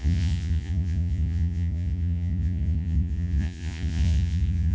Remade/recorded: remade